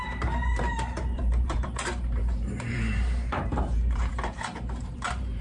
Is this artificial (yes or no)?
yes